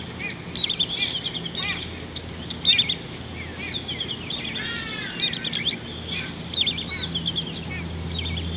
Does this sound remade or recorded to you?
recorded